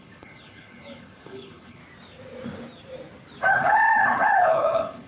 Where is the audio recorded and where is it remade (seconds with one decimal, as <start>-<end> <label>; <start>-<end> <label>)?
0.0-1.8 remade; 1.8-3.5 recorded; 3.5-5.1 remade

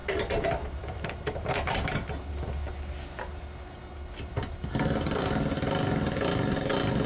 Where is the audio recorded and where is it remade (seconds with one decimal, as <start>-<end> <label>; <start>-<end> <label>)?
0.0-7.1 recorded

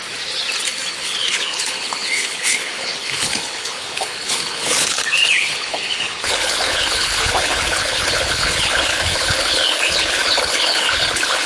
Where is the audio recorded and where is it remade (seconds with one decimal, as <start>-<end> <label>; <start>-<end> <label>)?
0.0-0.9 recorded; 0.9-11.5 remade

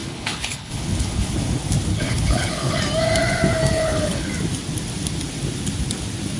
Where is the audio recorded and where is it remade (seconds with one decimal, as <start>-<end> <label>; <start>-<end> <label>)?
0.0-1.3 remade; 1.3-1.9 recorded; 1.9-2.8 remade; 2.8-3.7 recorded; 3.7-4.3 remade; 4.3-6.4 recorded

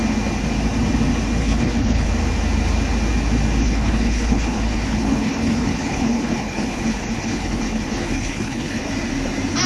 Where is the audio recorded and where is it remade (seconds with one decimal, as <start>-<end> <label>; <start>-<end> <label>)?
0.0-1.4 recorded; 1.4-2.1 remade; 2.1-3.6 recorded; 3.6-8.9 remade; 8.9-9.7 recorded